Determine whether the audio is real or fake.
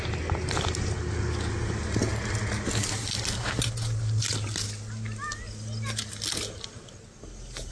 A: real